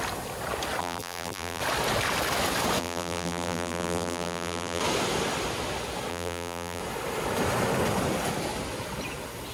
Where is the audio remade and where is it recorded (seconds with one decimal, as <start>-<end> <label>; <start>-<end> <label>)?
0.0-0.8 recorded; 0.8-1.6 remade; 1.6-2.8 recorded; 2.8-4.8 remade; 4.8-6.1 recorded; 6.1-6.8 remade; 6.8-9.5 recorded